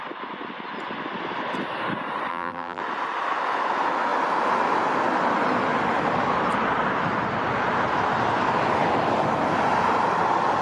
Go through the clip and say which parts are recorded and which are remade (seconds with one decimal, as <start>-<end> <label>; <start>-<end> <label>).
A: 0.0-2.3 recorded; 2.3-2.8 remade; 2.8-10.6 recorded